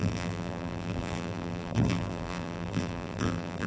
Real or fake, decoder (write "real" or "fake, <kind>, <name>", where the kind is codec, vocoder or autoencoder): fake, vocoder, BigVGAN v2